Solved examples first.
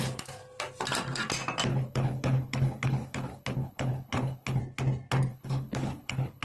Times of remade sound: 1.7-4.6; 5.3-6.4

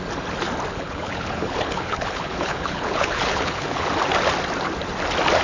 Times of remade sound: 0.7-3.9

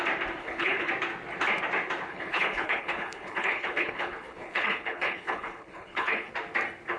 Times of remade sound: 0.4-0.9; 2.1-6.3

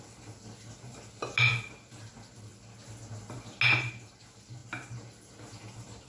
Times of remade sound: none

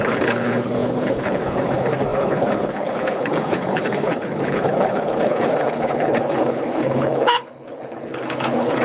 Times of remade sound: 0.0-8.8

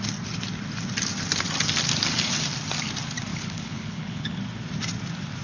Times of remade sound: 3.3-4.4